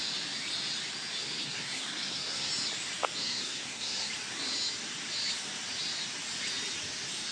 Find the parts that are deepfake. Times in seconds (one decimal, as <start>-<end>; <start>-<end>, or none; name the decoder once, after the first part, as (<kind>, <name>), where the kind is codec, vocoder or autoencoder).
1.2-2.5 (codec, SNAC); 3.2-4.1